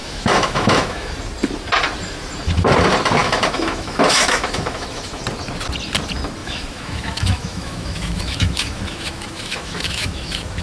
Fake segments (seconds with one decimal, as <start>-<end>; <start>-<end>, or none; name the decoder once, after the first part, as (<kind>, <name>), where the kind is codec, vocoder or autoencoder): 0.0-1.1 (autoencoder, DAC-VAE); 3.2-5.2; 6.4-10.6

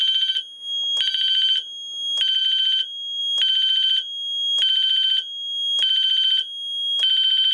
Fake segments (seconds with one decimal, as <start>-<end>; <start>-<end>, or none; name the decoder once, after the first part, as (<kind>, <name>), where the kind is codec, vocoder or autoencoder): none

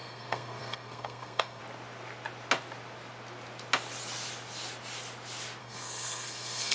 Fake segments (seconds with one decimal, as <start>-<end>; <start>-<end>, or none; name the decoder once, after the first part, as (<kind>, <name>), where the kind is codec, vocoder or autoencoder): 0.0-1.6 (codec, SNAC); 5.6-6.7

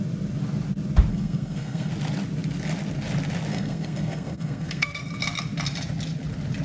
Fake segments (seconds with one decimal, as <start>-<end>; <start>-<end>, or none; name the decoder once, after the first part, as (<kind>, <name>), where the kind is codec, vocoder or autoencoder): 1.1-1.9 (codec, SNAC); 3.5-5.1

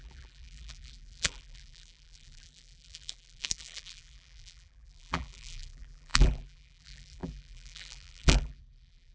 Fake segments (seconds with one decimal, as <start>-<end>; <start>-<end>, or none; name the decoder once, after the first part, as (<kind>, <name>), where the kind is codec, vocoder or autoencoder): 0.0-9.1 (vocoder, BigVGAN v2)

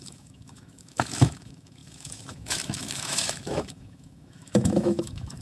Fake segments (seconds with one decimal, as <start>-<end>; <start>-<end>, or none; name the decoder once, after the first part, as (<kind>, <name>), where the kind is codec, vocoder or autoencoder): 0.0-5.4 (autoencoder, DAC-VAE)

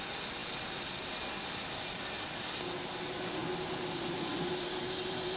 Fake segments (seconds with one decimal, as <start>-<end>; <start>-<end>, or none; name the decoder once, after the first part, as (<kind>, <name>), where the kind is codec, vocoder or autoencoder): none

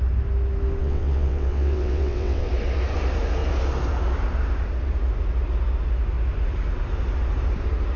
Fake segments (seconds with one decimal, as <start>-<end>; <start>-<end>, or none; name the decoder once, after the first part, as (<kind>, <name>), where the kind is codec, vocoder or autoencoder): 0.8-2.5 (vocoder, WaveNeXt)